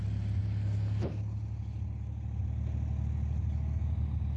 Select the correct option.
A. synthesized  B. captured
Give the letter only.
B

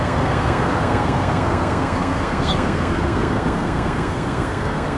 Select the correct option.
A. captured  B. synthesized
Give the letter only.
B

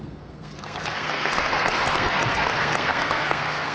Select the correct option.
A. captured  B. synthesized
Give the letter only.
B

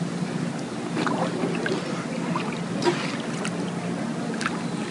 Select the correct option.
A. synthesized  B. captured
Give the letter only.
B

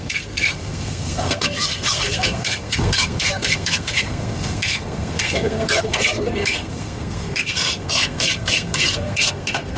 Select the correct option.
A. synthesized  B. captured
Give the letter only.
A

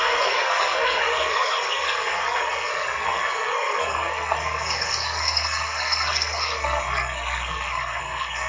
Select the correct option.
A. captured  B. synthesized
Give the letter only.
B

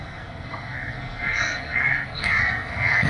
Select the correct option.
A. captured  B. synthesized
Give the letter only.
B